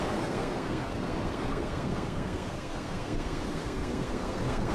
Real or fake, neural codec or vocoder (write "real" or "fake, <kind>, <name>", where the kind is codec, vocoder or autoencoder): fake, codec, SNAC